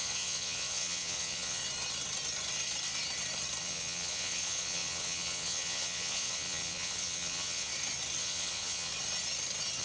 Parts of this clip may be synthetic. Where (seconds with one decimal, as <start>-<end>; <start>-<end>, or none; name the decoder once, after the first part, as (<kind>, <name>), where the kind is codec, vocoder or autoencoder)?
0.0-1.6 (vocoder, Vocos); 3.6-7.7; 8.2-8.9